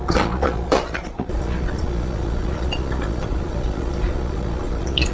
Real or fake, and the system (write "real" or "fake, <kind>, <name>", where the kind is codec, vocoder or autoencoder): fake, vocoder, Vocos